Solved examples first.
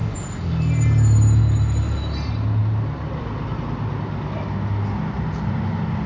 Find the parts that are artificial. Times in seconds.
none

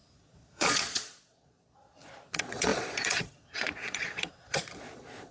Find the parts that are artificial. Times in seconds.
0.0-5.3

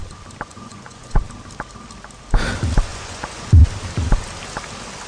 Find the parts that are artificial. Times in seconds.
0.5-1.2; 2.9-3.5

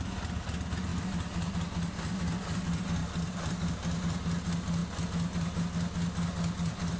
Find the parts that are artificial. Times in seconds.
none